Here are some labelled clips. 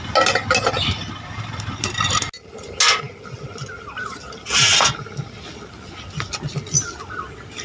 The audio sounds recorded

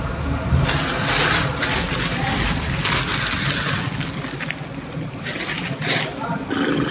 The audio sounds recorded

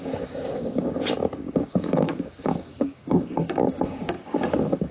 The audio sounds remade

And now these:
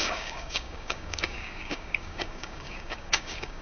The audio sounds remade